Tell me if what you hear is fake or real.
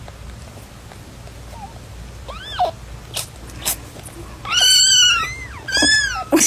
real